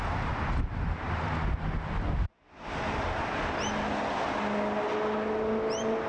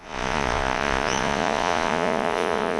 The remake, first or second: second